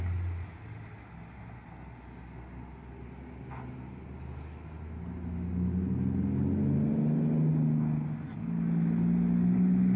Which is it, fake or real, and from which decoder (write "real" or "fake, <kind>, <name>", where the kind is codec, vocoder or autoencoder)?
real